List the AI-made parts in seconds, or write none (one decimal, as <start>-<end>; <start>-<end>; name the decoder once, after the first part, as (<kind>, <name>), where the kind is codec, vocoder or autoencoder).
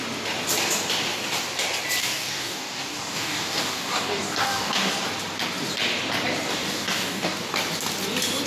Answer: 2.0-4.9 (codec, DAC); 6.5-7.5